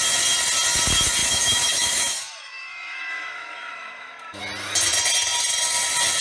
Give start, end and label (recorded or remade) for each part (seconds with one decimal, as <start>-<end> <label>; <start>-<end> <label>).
0.0-1.2 recorded; 1.2-4.4 remade; 4.4-6.2 recorded